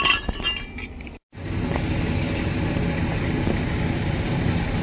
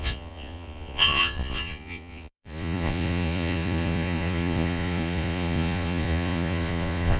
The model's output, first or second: second